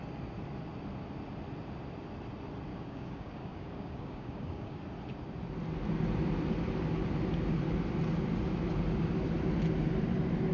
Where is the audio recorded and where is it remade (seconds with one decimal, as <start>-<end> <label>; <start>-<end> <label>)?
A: 0.0-2.7 recorded; 2.7-4.8 remade; 4.8-10.5 recorded

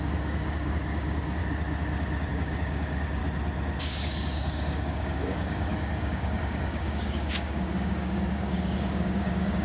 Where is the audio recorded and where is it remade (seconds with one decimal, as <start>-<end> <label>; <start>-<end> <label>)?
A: 0.0-1.4 remade; 1.4-2.3 recorded; 2.3-3.2 remade; 3.2-3.8 recorded; 3.8-9.6 remade

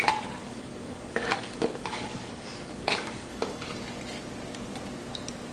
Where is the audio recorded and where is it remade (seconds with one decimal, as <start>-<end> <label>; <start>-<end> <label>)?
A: 0.0-0.4 recorded; 0.4-3.7 remade; 3.7-5.5 recorded

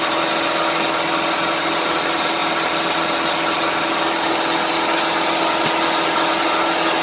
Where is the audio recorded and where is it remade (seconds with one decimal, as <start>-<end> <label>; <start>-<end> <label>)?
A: 0.0-7.0 recorded

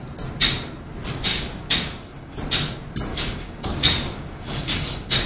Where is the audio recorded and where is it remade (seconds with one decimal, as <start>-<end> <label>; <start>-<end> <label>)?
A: 0.0-1.3 recorded; 1.3-2.4 remade; 2.4-3.1 recorded; 3.1-5.3 remade

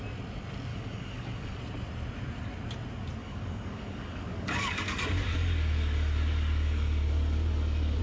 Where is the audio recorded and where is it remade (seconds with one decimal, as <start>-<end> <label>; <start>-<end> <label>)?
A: 0.0-0.7 recorded; 0.7-1.6 remade; 1.6-3.2 recorded; 3.2-8.0 remade